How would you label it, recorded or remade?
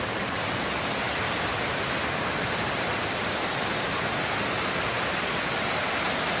recorded